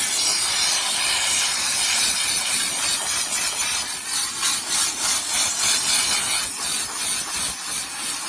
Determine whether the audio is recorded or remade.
recorded